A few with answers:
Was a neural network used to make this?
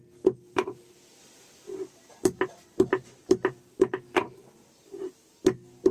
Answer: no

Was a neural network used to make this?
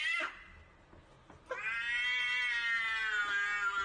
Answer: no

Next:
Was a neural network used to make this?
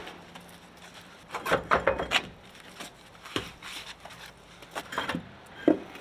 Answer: no